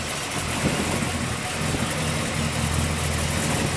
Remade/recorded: recorded